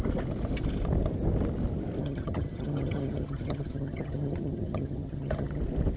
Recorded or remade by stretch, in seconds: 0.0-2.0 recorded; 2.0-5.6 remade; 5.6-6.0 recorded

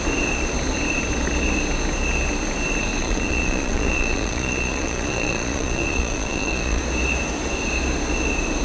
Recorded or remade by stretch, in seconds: 0.0-3.0 recorded; 3.0-6.8 remade; 6.8-8.6 recorded

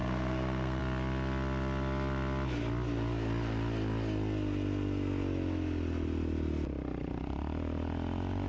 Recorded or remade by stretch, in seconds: 0.0-0.8 remade; 0.8-8.5 recorded